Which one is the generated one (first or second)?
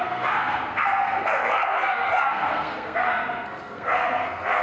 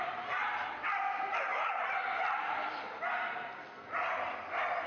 first